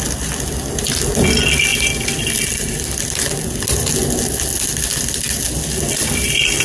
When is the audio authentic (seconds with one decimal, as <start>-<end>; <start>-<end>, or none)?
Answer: 0.0-6.6